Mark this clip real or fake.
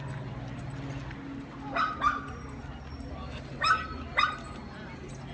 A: real